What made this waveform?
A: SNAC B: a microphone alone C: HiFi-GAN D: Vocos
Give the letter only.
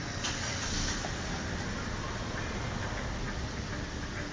B